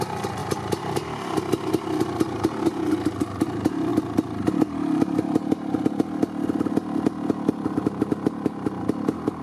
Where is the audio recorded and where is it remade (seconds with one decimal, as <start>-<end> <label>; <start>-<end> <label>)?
0.0-9.4 recorded